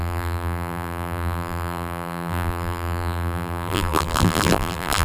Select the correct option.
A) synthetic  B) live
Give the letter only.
A